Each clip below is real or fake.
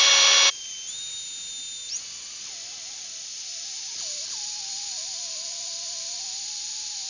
real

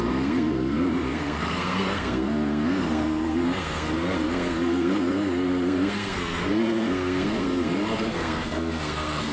fake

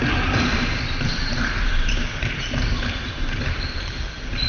fake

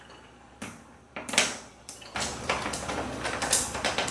fake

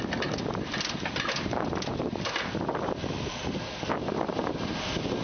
fake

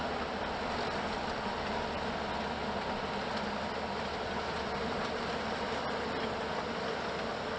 real